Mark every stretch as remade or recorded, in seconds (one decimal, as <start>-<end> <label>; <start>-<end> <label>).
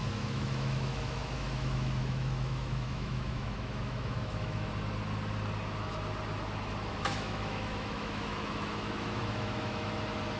0.0-4.7 remade; 4.7-6.9 recorded; 6.9-10.0 remade; 10.0-10.4 recorded